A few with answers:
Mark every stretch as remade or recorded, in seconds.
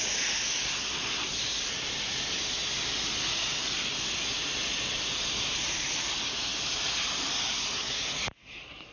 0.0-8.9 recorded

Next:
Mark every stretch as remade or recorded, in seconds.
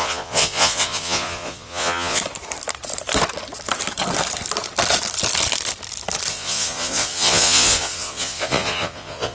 0.0-2.2 remade; 2.2-6.3 recorded; 6.3-9.3 remade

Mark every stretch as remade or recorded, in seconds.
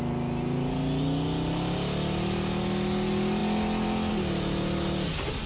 0.0-5.5 recorded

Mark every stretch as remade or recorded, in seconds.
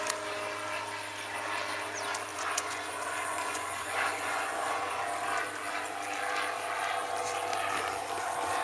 0.0-2.3 recorded; 2.3-5.0 remade; 5.0-8.6 recorded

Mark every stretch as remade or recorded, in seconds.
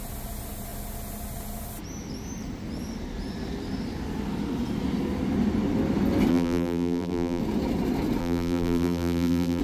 0.0-6.3 recorded; 6.3-7.4 remade; 7.4-8.2 recorded; 8.2-9.6 remade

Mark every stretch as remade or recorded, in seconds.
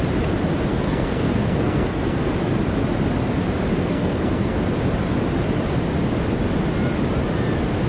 0.0-0.7 recorded; 0.7-2.2 remade; 2.2-3.8 recorded; 3.8-4.6 remade; 4.6-7.9 recorded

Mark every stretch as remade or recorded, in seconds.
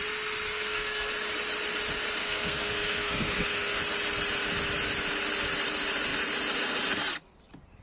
0.0-0.5 recorded; 0.5-1.1 remade; 1.1-2.2 recorded; 2.2-3.8 remade; 3.8-7.8 recorded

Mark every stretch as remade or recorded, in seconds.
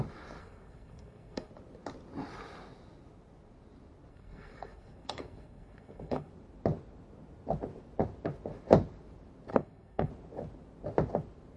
0.0-0.4 recorded; 0.4-1.5 remade; 1.5-4.1 recorded; 4.1-6.3 remade; 6.3-9.5 recorded; 9.5-10.1 remade; 10.1-11.6 recorded